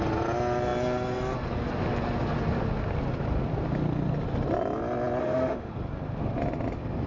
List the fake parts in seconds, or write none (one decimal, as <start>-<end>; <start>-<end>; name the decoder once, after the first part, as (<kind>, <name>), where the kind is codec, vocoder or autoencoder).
5.2-5.7 (autoencoder, DAC-VAE)